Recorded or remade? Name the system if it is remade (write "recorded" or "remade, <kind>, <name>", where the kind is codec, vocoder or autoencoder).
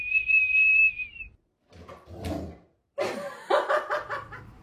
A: recorded